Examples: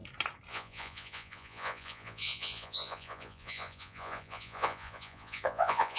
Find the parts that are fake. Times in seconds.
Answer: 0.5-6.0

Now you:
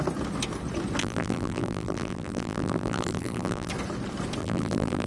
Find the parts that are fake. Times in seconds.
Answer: 1.0-3.7; 4.4-5.1

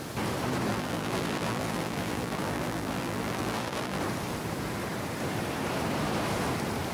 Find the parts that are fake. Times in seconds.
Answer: 0.7-4.0

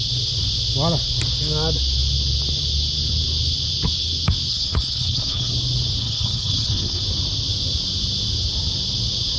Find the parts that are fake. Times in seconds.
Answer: 4.5-5.5; 6.0-7.0

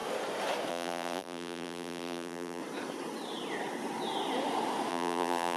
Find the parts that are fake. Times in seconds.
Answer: 0.7-2.6; 4.9-5.6